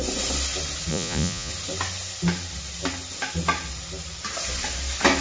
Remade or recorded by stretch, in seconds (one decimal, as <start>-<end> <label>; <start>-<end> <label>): 0.0-0.9 recorded; 0.9-1.5 remade; 1.5-5.2 recorded